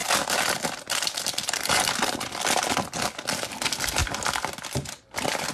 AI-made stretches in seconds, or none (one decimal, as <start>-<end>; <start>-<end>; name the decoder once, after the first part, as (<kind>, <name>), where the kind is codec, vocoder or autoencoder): none